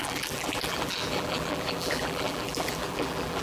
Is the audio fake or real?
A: fake